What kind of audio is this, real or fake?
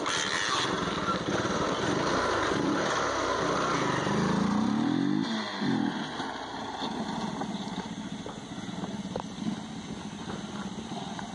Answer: real